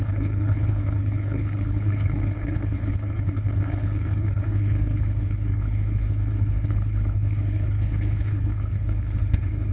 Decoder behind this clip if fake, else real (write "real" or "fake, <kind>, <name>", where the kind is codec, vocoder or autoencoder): fake, codec, HILCodec